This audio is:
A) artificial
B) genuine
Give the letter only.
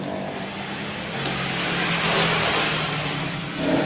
B